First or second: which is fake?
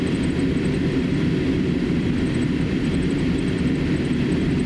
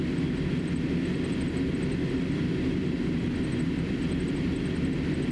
first